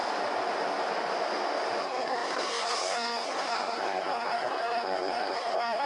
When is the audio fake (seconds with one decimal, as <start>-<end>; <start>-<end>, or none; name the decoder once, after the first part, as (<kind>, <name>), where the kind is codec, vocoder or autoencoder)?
1.8-5.9 (codec, SNAC)